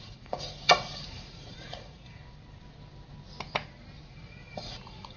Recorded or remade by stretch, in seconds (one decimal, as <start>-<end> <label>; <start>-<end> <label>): 0.0-2.2 remade; 2.2-4.1 recorded; 4.1-5.2 remade

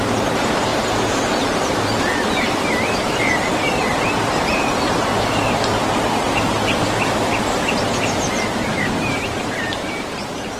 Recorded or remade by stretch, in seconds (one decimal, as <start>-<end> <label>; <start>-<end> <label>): 0.0-0.7 remade; 0.7-1.4 recorded; 1.4-5.1 remade; 5.1-8.3 recorded; 8.3-10.6 remade

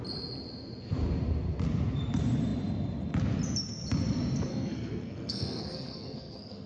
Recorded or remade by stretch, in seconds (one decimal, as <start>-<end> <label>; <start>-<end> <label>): 0.0-4.5 recorded; 4.5-6.7 remade